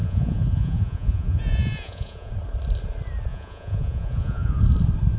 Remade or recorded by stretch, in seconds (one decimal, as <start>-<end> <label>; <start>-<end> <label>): 0.0-2.3 remade; 2.3-3.3 recorded; 3.3-4.6 remade; 4.6-5.2 recorded